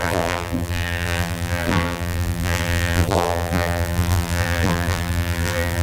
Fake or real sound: fake